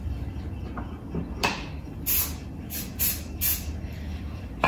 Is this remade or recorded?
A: recorded